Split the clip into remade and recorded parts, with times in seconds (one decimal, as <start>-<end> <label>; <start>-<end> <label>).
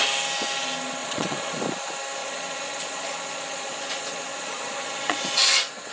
0.0-1.0 recorded; 1.0-1.6 remade; 1.6-2.2 recorded; 2.2-5.9 remade